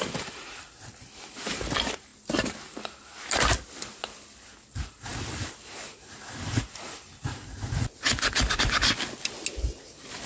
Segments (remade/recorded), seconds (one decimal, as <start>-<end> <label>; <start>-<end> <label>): 0.0-10.3 recorded